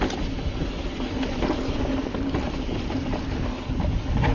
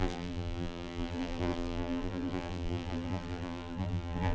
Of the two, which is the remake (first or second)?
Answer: second